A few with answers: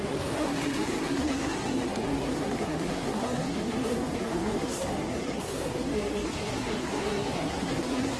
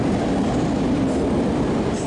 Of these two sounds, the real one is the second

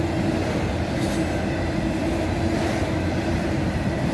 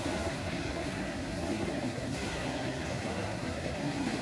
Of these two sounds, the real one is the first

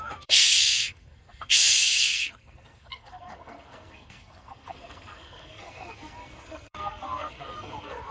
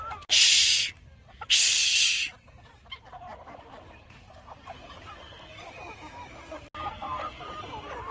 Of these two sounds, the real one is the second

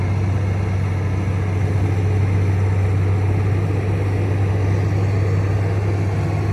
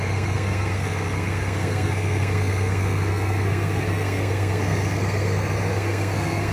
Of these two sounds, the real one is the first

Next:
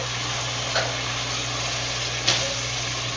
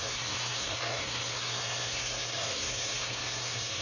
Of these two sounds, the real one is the first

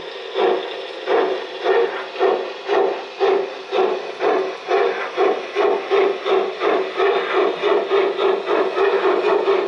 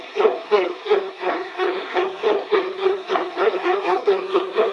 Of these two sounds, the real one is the first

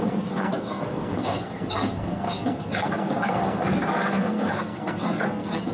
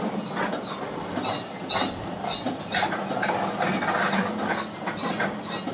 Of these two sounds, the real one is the second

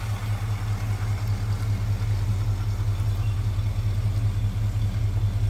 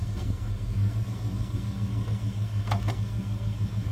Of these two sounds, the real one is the first